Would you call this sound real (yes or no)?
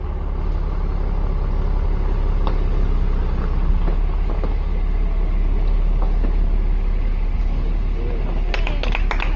yes